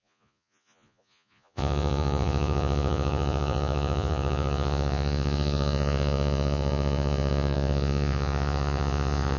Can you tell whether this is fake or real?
fake